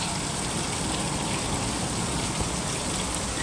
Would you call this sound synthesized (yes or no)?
no